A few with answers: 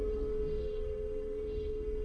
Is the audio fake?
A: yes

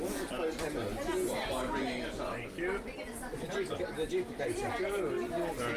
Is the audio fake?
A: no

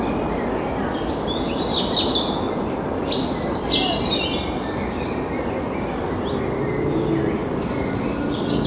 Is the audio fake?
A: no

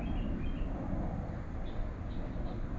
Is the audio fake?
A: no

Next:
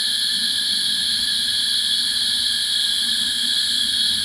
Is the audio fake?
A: no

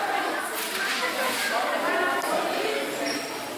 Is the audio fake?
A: no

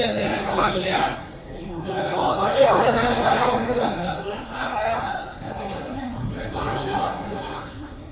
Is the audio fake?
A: yes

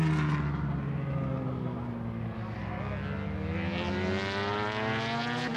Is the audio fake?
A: no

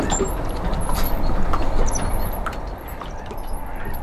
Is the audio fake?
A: no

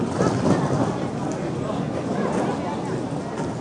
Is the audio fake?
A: no